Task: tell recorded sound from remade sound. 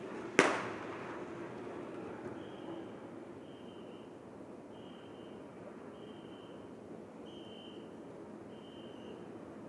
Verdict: recorded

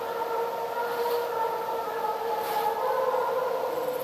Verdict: recorded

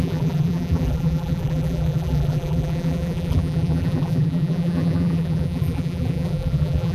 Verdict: remade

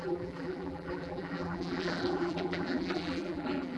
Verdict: remade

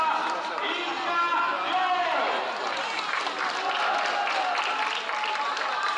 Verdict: recorded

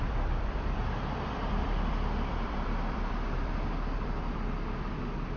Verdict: remade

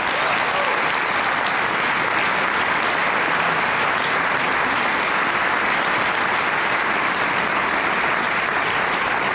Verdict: recorded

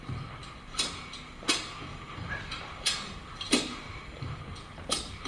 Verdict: recorded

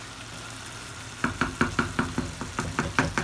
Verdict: recorded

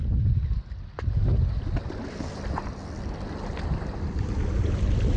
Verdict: recorded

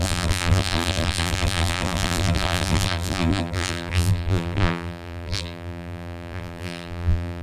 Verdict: remade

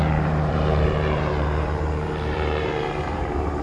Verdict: remade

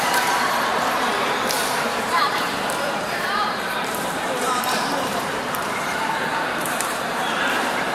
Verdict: remade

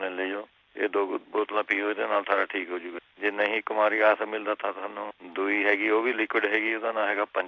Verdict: recorded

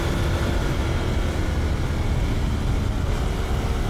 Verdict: recorded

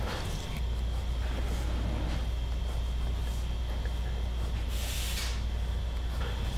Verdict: recorded